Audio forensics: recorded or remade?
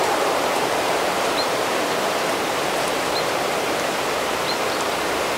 remade